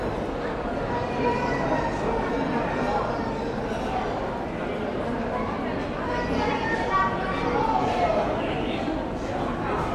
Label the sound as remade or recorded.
recorded